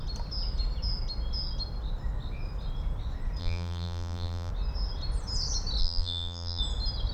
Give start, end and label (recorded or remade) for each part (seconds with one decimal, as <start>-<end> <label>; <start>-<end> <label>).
0.0-3.4 recorded; 3.4-4.5 remade; 4.5-5.8 recorded; 5.8-6.6 remade; 6.6-7.1 recorded